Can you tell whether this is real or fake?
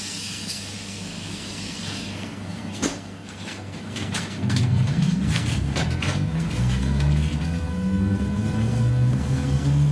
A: fake